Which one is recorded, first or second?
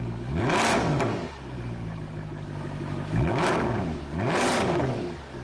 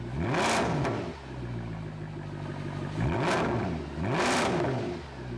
second